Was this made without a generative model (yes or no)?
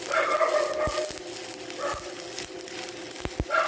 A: yes